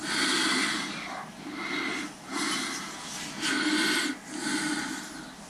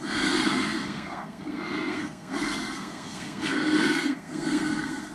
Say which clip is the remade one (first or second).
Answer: second